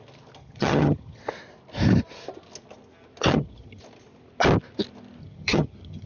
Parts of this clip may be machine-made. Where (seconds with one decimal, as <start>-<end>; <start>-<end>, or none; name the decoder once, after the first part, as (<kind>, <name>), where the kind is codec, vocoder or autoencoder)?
0.4-1.2 (vocoder, HiFi-GAN); 3.3-3.8; 5.2-6.1